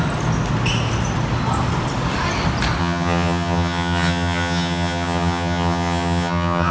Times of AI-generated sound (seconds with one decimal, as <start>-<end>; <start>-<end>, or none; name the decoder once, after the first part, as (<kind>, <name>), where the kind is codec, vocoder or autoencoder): 2.8-6.7 (vocoder, HiFi-GAN)